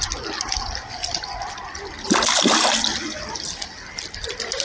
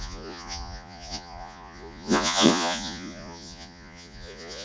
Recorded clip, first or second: first